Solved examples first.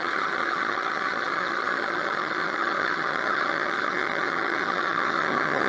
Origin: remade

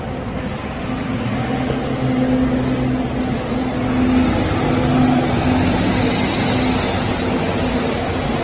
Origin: recorded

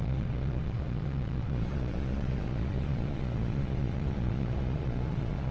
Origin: remade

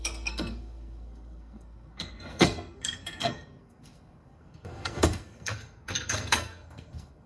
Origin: remade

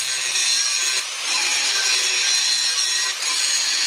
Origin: recorded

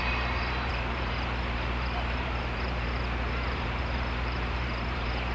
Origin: remade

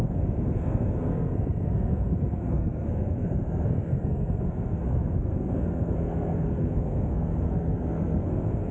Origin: remade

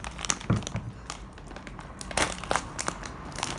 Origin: recorded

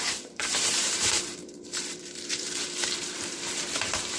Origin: remade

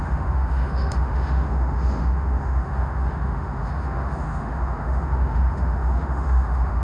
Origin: remade